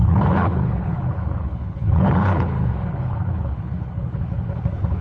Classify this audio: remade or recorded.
remade